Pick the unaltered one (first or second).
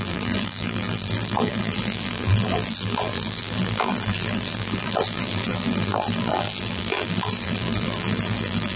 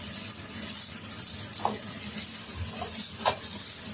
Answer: second